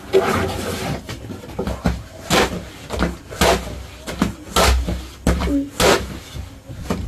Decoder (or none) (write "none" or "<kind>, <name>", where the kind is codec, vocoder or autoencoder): none